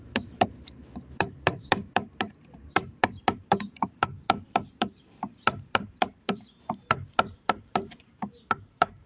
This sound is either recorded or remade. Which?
remade